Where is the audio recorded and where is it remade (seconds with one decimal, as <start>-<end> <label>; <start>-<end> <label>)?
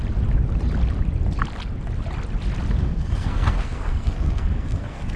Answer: 0.0-2.8 recorded; 2.8-5.2 remade